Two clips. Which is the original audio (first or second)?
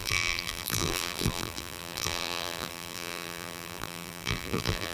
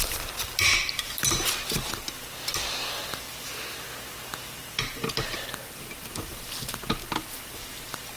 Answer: second